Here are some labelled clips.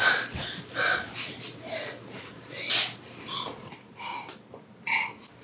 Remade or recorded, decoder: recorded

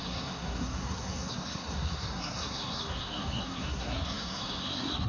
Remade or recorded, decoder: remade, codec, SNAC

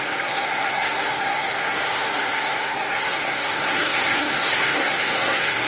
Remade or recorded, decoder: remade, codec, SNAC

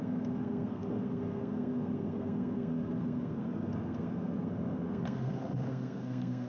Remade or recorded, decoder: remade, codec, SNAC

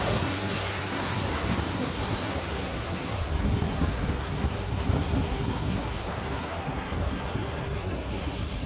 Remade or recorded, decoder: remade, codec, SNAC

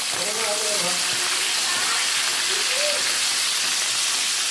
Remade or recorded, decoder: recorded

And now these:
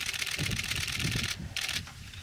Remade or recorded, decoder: recorded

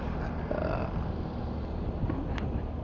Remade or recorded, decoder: recorded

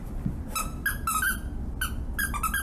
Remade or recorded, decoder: recorded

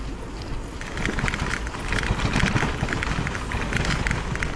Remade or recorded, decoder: recorded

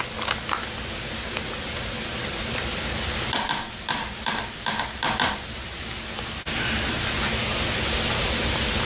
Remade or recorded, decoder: recorded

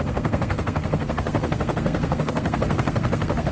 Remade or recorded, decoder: remade, codec, SNAC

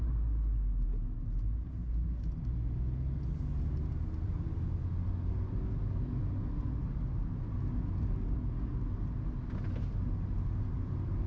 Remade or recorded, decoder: recorded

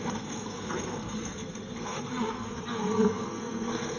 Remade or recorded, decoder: remade, codec, SNAC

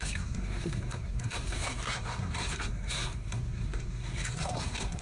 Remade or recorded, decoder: remade, codec, SNAC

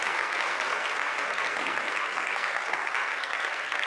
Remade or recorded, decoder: remade, codec, SNAC